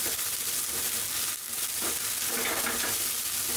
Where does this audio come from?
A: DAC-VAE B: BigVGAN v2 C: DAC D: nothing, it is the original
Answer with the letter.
D